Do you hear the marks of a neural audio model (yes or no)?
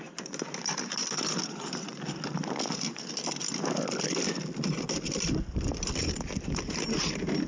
no